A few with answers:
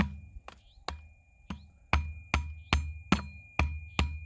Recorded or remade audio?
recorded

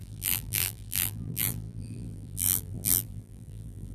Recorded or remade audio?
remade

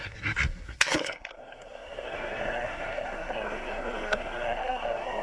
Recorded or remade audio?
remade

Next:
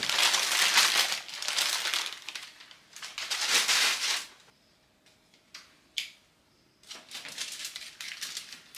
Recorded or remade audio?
recorded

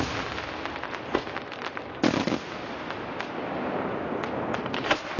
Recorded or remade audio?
recorded